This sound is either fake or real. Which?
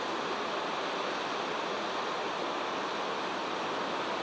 real